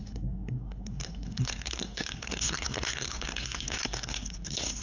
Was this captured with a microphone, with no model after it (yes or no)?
no